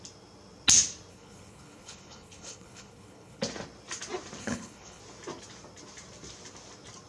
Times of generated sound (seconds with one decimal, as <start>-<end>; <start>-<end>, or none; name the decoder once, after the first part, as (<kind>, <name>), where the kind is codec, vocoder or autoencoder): 1.1-3.4 (codec, HILCodec); 4.4-5.0